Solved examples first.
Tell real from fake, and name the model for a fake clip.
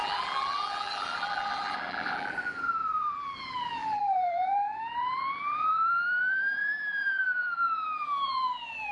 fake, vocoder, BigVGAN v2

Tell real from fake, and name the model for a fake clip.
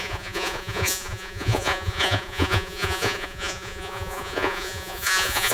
fake, vocoder, Vocos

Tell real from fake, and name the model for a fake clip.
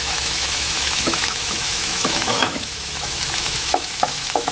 fake, autoencoder, DAC-VAE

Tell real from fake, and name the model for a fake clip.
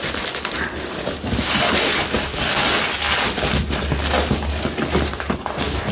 real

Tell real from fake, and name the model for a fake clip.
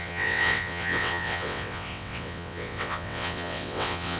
fake, vocoder, WaveNeXt